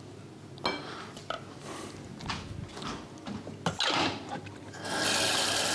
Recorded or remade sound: recorded